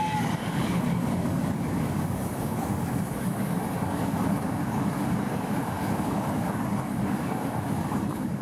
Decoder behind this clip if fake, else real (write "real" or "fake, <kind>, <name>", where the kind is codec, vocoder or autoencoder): fake, codec, DAC